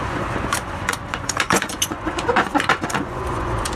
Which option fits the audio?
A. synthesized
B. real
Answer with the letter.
A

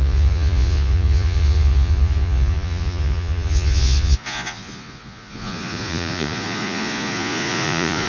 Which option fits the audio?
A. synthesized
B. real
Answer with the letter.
A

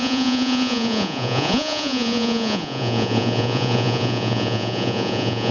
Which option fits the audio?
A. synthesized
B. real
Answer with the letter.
A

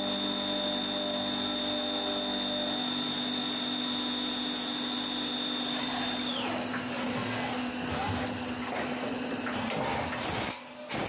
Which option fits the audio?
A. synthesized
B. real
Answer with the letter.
B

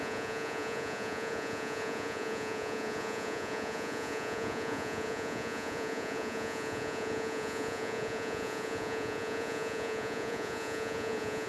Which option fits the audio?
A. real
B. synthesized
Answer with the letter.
B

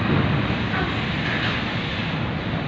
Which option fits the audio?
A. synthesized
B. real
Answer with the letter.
B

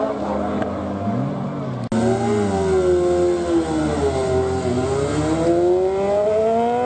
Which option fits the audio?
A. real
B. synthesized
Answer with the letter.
A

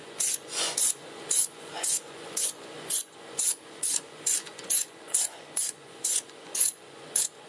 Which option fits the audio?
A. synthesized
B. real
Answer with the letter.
A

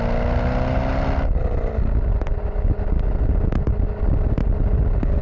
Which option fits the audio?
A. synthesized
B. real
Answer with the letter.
B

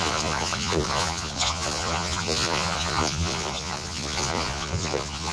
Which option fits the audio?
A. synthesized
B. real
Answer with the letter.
A